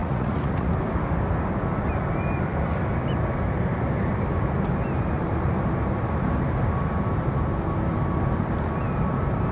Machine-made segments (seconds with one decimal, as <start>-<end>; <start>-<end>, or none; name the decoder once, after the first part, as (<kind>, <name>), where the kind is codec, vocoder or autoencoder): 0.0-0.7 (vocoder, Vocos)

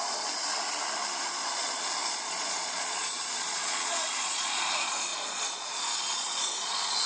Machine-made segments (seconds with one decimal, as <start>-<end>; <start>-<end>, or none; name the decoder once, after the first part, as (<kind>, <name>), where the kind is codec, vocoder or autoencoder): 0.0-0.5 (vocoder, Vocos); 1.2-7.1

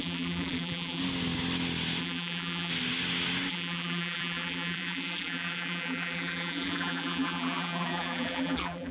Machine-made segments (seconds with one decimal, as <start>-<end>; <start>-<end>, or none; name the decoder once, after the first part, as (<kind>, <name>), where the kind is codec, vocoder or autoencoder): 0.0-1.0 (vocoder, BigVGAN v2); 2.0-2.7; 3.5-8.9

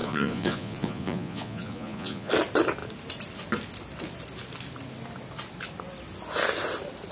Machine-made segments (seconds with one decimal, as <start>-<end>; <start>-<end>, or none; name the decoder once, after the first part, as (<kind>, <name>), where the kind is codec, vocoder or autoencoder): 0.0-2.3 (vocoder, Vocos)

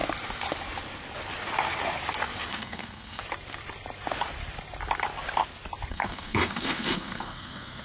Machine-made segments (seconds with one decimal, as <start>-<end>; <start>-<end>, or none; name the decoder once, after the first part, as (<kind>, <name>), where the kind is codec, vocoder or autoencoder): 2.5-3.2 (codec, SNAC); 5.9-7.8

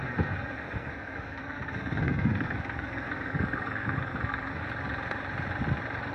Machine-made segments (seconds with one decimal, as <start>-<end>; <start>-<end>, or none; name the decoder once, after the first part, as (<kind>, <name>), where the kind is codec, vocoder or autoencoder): 0.0-4.6 (codec, SNAC)

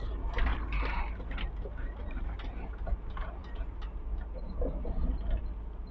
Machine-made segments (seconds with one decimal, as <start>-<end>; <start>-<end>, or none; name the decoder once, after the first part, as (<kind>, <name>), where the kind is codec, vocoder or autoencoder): none

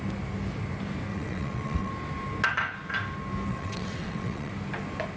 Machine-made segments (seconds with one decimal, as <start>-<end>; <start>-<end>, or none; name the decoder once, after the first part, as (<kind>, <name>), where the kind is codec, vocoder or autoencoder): 1.1-1.9 (vocoder, WaveNeXt); 3.5-4.5